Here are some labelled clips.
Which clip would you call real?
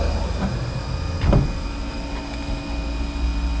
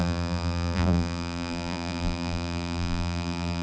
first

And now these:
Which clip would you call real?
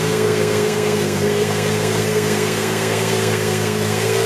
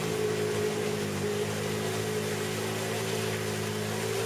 second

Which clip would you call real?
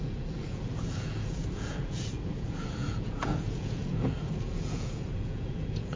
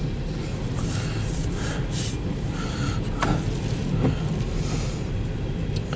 second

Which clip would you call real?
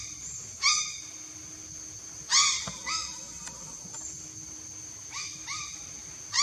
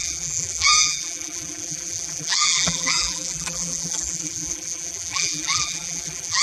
first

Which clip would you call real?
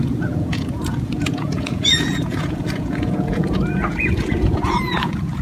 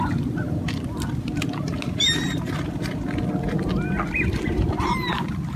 second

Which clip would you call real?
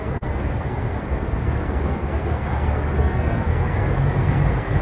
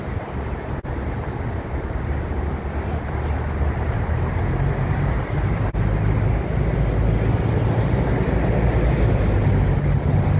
second